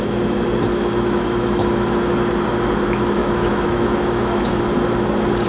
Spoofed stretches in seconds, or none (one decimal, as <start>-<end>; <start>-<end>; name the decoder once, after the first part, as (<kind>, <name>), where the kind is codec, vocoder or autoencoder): 0.7-1.7 (autoencoder, DAC-VAE); 3.2-4.6